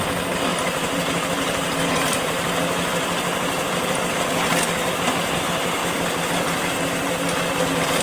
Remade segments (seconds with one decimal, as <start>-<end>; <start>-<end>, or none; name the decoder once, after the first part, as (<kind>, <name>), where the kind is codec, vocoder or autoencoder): 0.5-4.0 (vocoder, BigVGAN v2); 5.8-6.8